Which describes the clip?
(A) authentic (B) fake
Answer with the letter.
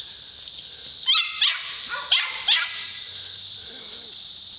A